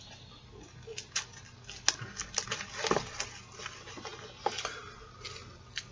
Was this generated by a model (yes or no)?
no